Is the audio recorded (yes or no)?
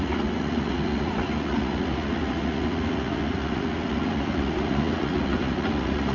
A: no